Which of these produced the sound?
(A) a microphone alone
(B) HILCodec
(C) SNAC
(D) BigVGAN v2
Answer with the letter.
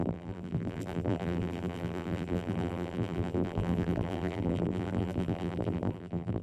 D